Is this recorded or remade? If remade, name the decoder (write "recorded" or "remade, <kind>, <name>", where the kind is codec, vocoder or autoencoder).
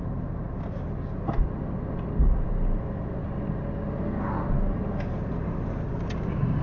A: recorded